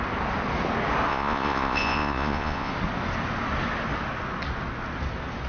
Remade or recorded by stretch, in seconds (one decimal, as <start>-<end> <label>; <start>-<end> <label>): 0.0-1.1 recorded; 1.1-2.7 remade; 2.7-5.5 recorded